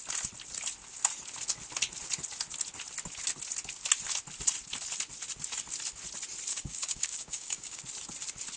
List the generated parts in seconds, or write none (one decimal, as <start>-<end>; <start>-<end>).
6.5-7.8